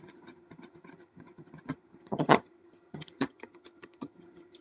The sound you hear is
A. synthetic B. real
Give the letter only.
A